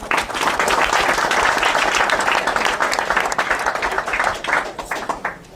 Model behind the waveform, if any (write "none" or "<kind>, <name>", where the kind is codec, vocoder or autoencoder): none